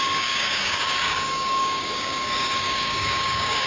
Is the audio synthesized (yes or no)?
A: yes